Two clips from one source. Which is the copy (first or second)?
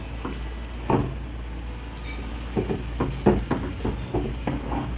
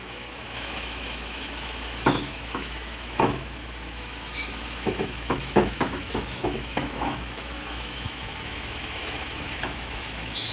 second